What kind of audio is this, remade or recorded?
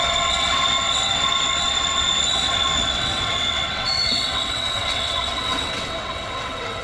remade